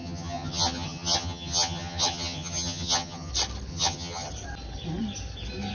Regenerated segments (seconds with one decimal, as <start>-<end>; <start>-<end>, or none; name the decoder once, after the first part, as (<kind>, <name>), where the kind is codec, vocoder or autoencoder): 0.0-3.3 (vocoder, HiFi-GAN); 3.7-4.3